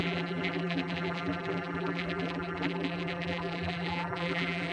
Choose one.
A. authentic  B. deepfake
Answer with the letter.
B